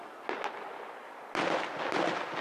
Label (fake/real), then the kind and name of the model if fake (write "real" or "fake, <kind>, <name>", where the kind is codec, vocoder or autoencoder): real